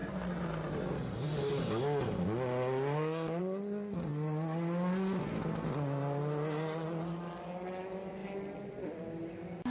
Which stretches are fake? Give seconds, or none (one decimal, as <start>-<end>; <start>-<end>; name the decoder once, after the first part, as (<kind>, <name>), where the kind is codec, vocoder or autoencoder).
none